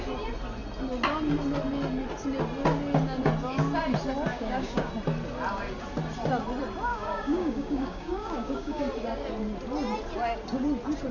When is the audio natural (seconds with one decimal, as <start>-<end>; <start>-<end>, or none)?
0.0-4.3; 4.9-6.9; 8.8-11.1